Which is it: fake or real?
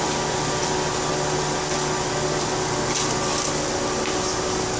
real